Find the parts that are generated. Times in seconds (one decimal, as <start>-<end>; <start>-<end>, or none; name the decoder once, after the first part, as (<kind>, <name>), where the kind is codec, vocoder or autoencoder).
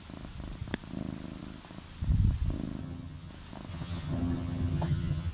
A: 2.8-3.3 (vocoder, HiFi-GAN); 3.7-5.3